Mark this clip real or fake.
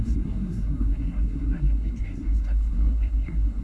fake